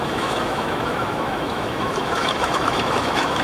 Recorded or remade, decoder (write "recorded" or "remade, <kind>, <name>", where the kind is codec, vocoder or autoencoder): remade, autoencoder, DAC-VAE